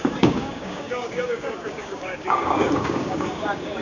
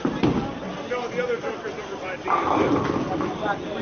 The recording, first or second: second